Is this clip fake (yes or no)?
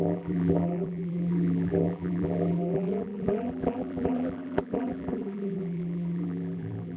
yes